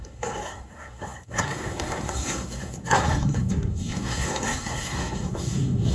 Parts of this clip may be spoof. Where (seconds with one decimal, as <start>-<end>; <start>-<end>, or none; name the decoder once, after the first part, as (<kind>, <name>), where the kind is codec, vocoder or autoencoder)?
0.0-5.9 (codec, SNAC)

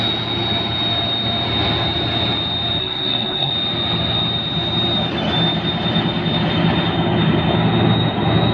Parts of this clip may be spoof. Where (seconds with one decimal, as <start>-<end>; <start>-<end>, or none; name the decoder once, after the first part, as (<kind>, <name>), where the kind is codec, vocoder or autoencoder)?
2.8-3.5 (codec, SNAC)

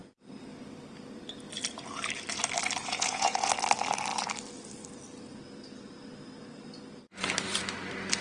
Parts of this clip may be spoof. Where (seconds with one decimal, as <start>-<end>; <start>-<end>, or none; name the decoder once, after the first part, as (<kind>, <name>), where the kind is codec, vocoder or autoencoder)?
2.8-3.5 (vocoder, Vocos)

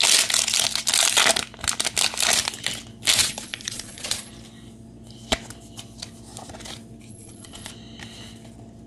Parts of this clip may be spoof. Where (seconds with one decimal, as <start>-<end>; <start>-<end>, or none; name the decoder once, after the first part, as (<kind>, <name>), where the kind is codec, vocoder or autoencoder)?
3.2-4.3 (vocoder, Vocos); 7.1-7.7